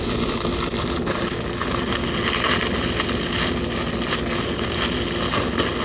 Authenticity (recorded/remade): recorded